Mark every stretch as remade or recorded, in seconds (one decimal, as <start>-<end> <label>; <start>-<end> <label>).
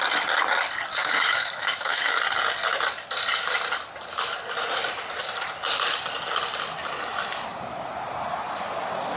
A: 0.0-1.0 recorded; 1.0-2.2 remade; 2.2-9.2 recorded